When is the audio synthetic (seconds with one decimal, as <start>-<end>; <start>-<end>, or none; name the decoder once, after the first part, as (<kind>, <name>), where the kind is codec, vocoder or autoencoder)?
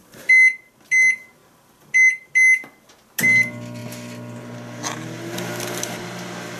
none